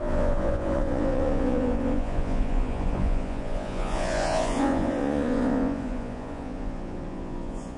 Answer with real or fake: fake